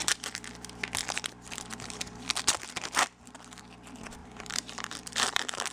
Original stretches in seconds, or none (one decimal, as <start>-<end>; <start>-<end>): 0.0-4.2

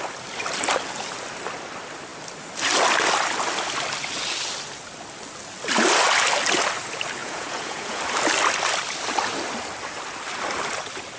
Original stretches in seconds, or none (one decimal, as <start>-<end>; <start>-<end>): 0.0-7.2; 8.0-11.2